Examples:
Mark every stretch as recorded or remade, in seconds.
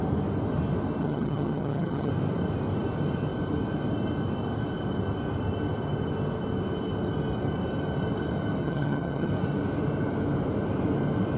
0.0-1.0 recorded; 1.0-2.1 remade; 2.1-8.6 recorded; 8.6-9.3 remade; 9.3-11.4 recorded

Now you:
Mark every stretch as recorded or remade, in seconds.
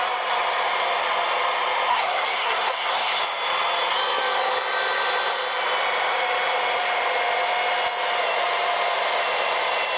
0.0-1.9 recorded; 1.9-3.2 remade; 3.2-10.0 recorded